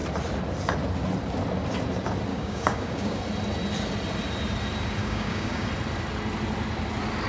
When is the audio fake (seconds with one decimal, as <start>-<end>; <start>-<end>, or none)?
2.3-3.2; 5.0-5.7